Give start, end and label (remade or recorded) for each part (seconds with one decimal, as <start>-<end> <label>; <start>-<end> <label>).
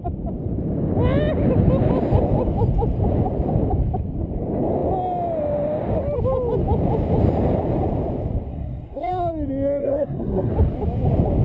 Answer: 0.0-8.5 recorded; 8.5-9.1 remade; 9.1-9.8 recorded; 9.8-10.5 remade; 10.5-11.4 recorded